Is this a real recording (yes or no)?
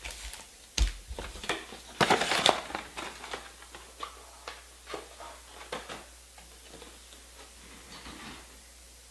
yes